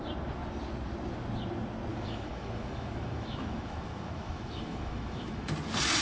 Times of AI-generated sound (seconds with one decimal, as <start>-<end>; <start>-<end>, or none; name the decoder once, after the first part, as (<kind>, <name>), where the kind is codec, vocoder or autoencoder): 1.9-5.5 (autoencoder, DAC-VAE)